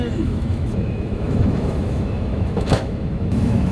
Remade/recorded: remade